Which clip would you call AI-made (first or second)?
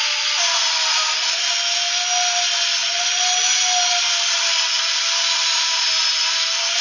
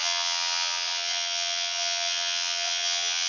second